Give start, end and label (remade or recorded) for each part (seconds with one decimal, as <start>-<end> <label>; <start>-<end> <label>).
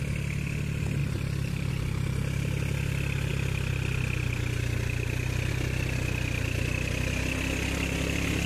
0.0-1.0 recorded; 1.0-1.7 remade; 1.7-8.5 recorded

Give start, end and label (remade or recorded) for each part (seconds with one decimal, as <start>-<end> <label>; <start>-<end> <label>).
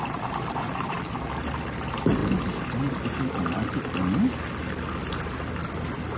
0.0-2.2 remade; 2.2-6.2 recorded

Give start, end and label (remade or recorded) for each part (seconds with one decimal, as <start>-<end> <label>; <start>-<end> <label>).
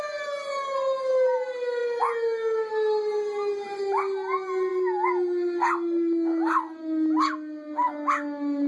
0.0-8.7 recorded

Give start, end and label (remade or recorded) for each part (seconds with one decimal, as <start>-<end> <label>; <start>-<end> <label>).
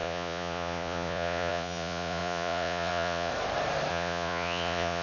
0.0-3.3 remade; 3.3-3.9 recorded; 3.9-5.0 remade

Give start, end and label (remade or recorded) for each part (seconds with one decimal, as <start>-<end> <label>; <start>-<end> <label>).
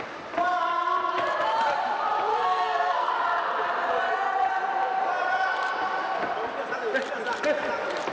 0.0-2.3 recorded; 2.3-3.1 remade; 3.1-8.1 recorded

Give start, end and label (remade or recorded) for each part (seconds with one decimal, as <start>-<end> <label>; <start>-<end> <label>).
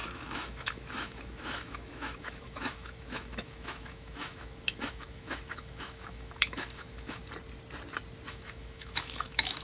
0.0-7.2 remade; 7.2-8.3 recorded; 8.3-9.6 remade